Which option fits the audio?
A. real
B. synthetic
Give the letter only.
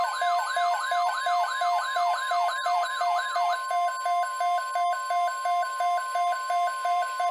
B